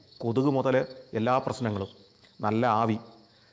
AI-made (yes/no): yes